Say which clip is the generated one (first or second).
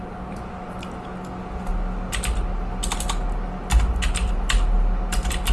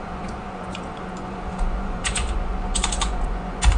second